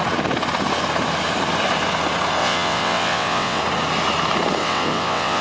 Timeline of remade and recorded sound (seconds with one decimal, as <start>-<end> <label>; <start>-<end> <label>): 0.0-2.4 recorded; 2.4-3.6 remade; 3.6-4.6 recorded; 4.6-5.4 remade

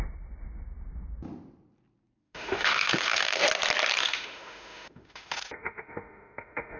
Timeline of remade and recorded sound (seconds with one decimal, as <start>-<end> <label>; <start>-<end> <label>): 0.0-2.2 recorded; 2.2-3.4 remade; 3.4-4.0 recorded; 4.0-6.8 remade

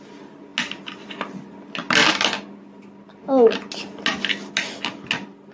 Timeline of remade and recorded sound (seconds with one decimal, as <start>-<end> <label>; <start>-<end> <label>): 0.0-5.5 recorded